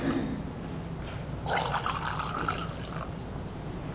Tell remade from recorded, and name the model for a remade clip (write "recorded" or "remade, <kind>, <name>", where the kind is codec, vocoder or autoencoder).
recorded